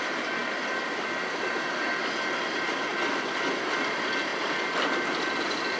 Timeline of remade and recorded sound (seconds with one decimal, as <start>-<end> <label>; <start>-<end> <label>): 0.0-4.3 remade; 4.3-5.2 recorded; 5.2-5.8 remade